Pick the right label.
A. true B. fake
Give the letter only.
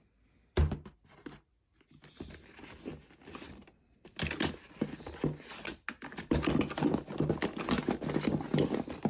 A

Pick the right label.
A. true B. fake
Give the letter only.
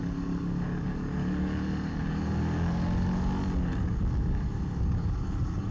B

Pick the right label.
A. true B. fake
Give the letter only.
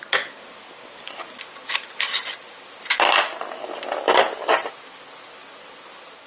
A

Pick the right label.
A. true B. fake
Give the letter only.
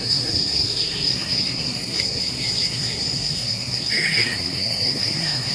B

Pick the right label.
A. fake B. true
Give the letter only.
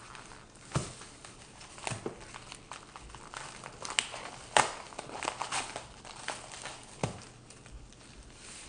B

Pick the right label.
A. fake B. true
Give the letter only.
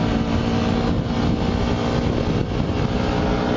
B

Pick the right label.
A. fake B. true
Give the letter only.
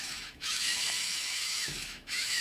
A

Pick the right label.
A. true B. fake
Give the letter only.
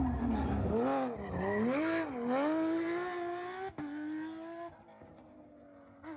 A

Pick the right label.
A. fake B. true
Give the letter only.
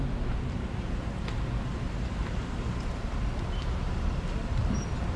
A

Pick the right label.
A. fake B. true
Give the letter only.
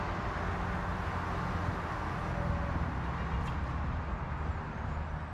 B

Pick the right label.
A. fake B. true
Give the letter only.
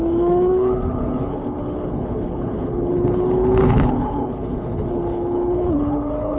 A